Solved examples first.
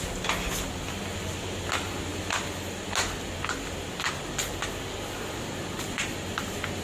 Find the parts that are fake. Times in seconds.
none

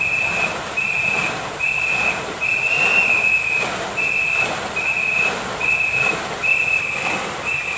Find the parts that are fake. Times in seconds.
none

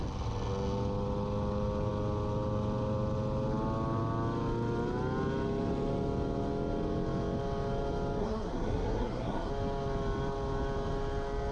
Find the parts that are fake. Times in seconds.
8.2-9.5 (codec, SNAC)

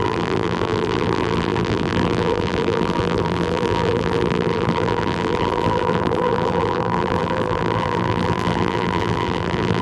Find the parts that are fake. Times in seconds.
0.0-9.8 (vocoder, BigVGAN v2)